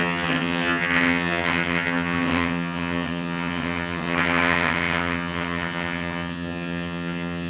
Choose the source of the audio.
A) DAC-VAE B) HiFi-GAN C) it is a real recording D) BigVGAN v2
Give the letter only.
B